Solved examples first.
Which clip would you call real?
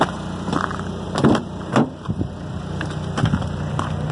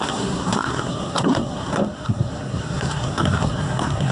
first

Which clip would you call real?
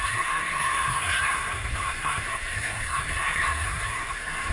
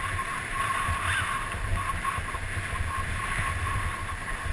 second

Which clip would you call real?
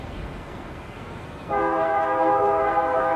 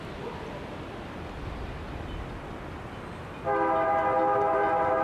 second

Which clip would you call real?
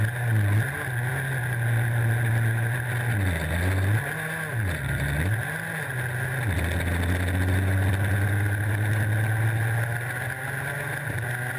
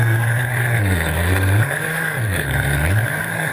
first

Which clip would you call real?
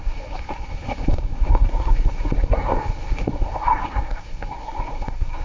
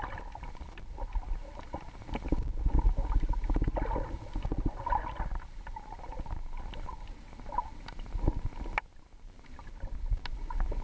second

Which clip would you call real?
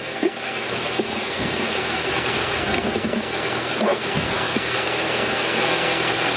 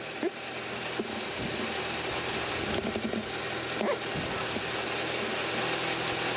second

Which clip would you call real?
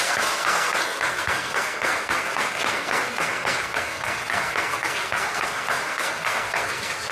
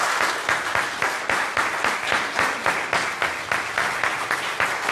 second